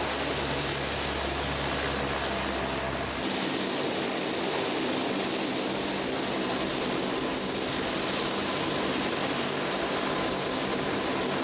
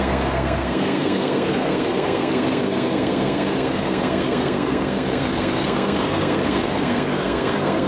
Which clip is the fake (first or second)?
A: second